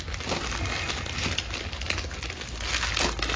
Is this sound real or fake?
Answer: real